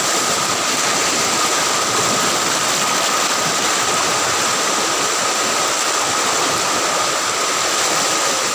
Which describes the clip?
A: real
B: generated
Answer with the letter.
A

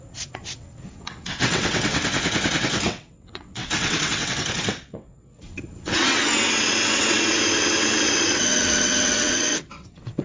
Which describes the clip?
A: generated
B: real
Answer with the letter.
A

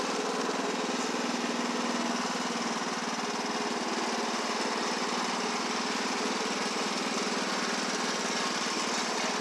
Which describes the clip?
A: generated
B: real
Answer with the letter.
B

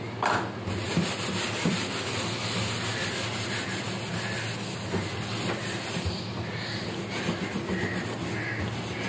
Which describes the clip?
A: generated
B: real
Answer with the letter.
B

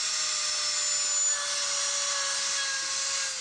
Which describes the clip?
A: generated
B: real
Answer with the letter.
B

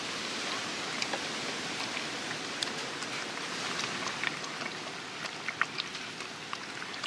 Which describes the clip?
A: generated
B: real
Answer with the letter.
B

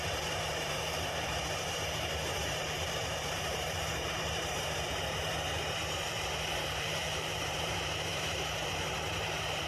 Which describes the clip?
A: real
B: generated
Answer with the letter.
B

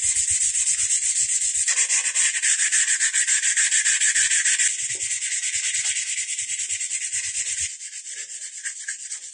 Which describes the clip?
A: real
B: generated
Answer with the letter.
A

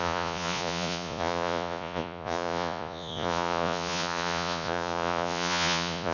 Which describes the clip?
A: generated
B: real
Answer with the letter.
A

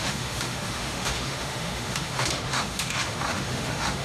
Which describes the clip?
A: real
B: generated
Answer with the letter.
B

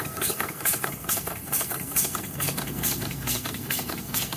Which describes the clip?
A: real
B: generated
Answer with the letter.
B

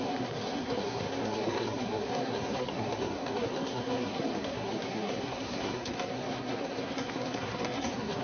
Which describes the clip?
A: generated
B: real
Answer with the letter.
A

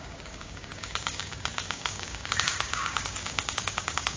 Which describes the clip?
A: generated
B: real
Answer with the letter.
A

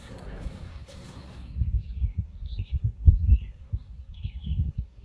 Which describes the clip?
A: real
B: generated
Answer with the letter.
B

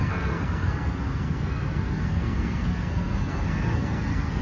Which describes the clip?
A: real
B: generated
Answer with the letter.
B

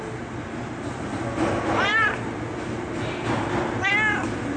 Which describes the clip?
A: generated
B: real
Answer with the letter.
B